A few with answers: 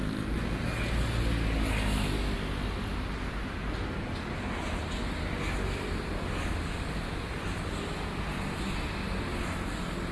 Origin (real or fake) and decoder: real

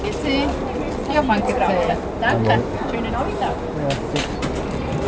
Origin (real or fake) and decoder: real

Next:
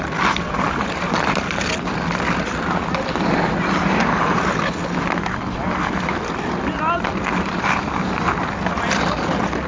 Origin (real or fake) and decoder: real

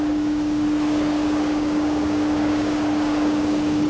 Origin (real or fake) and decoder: fake, codec, DAC